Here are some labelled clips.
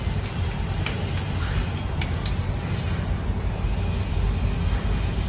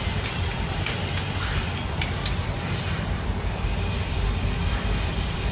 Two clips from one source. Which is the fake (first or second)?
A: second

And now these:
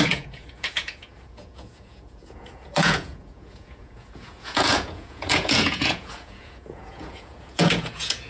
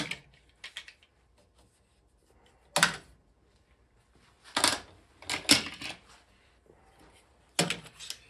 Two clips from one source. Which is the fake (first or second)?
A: first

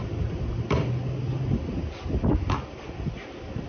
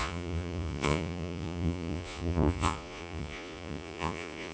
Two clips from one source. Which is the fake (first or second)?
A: second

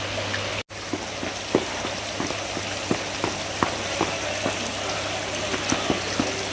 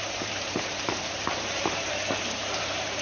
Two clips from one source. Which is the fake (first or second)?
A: second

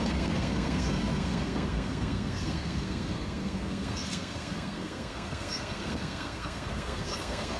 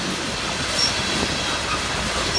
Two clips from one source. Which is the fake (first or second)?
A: first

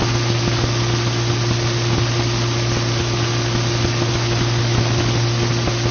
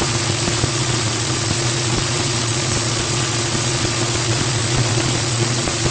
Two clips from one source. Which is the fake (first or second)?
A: second